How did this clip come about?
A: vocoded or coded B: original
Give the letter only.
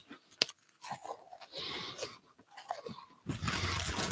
B